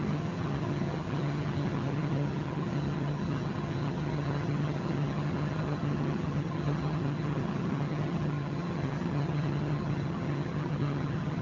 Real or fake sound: fake